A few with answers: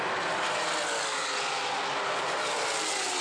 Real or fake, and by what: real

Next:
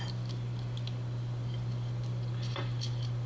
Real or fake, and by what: real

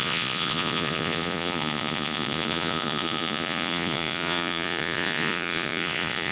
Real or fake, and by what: fake, vocoder, Vocos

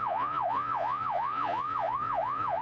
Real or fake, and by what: fake, vocoder, Vocos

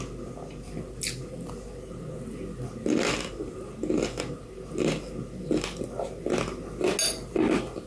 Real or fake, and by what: real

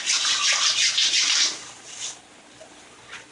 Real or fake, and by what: real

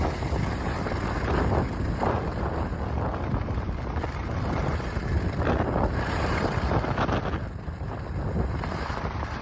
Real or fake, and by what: real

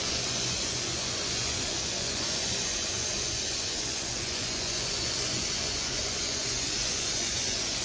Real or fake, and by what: fake, vocoder, Vocos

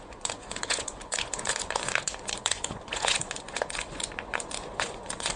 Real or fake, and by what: fake, vocoder, Vocos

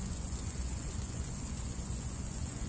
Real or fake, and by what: fake, vocoder, Vocos